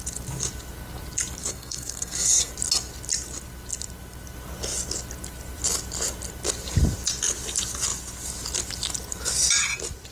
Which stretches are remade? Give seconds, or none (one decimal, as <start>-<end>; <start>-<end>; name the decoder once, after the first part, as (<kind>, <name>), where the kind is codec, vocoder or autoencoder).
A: 1.4-2.5 (codec, SNAC)